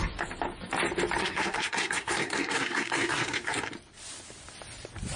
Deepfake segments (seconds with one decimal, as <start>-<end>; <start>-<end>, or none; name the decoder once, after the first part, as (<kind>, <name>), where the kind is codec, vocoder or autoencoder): 1.2-3.7 (codec, SNAC)